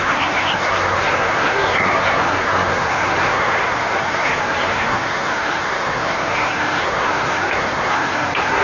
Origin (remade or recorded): remade